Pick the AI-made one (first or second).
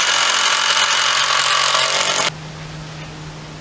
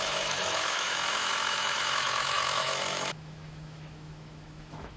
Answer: second